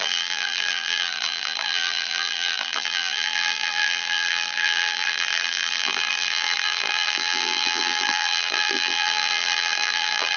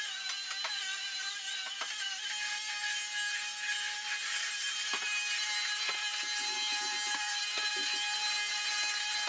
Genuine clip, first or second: second